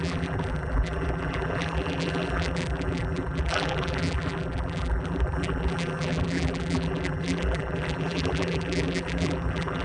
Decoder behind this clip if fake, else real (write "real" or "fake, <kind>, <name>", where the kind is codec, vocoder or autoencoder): fake, vocoder, BigVGAN v2